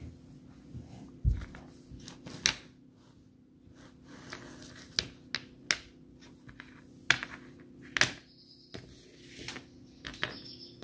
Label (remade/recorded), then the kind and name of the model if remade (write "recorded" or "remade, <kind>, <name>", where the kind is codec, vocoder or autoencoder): recorded